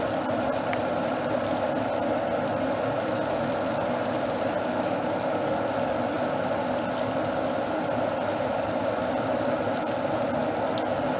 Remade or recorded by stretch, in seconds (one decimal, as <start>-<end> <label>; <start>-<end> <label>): 0.0-11.2 recorded